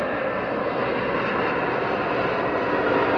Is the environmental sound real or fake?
real